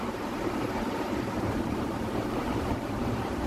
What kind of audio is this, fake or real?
fake